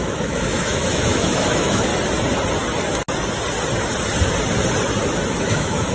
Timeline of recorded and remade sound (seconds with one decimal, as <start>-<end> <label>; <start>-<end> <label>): 0.0-1.9 remade; 1.9-5.4 recorded; 5.4-5.9 remade